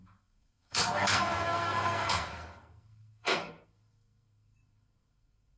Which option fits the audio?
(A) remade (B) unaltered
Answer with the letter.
A